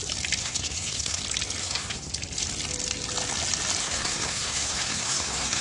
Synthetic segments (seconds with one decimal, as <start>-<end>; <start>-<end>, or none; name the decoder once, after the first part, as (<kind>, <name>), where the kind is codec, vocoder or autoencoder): 0.4-1.2 (codec, SNAC); 1.6-2.1; 3.8-5.6